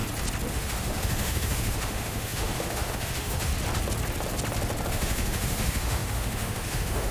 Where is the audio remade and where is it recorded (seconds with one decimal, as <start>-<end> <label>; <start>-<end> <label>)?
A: 0.0-0.5 recorded; 0.5-3.5 remade; 3.5-4.9 recorded; 4.9-7.1 remade